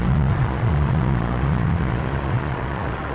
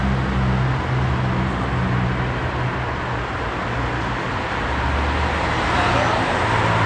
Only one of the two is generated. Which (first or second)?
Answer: first